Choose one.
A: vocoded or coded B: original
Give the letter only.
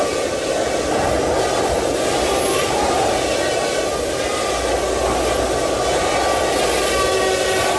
B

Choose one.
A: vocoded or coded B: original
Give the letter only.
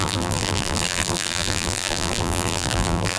A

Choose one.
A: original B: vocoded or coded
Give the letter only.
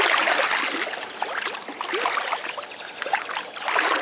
A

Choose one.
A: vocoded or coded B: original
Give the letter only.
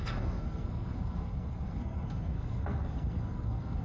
A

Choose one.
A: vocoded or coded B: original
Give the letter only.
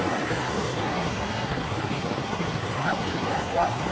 A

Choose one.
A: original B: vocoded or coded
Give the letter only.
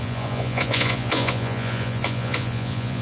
B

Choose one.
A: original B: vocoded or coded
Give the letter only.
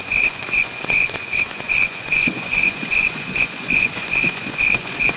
B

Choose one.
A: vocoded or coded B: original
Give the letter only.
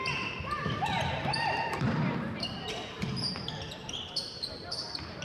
A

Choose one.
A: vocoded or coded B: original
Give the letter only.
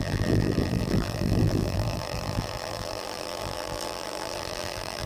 A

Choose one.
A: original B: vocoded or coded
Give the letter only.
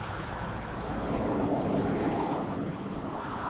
B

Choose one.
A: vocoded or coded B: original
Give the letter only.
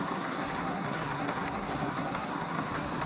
A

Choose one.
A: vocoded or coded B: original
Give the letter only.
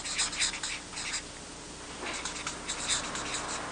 B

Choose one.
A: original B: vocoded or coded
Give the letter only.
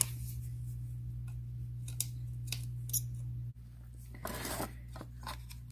A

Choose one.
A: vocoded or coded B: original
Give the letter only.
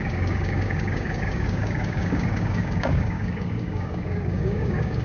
A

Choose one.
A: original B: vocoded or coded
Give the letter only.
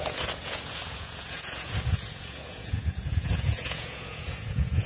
B